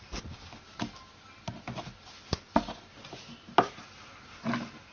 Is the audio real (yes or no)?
yes